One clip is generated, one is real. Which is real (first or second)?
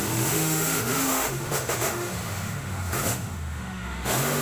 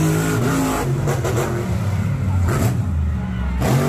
second